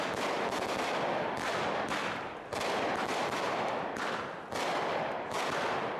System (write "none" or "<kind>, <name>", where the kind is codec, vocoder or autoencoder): vocoder, BigVGAN v2